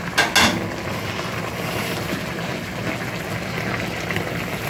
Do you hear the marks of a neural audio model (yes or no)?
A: no